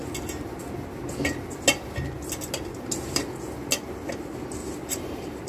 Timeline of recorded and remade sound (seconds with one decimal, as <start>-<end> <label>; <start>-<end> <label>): 0.0-4.6 recorded; 4.6-5.5 remade